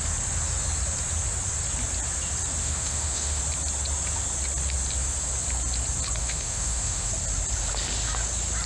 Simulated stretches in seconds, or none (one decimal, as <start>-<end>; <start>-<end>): 2.6-3.4; 6.2-7.1